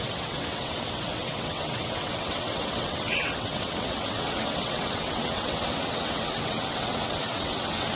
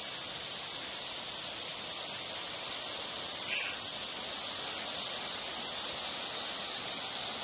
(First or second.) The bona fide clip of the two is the second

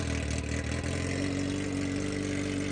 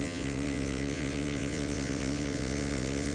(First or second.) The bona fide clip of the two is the first